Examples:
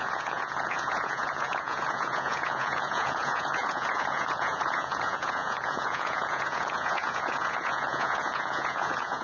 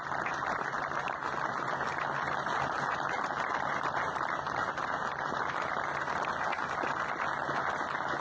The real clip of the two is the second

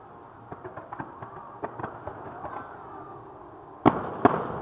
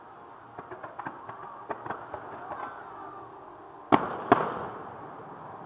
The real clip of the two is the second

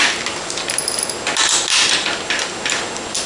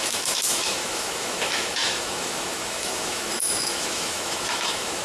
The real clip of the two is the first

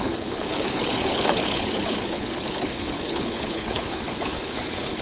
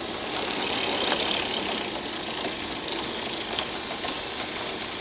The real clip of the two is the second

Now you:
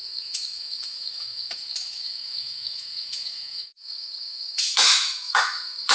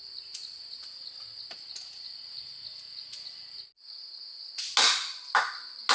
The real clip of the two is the second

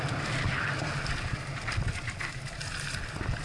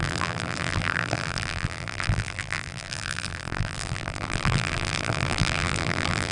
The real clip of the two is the first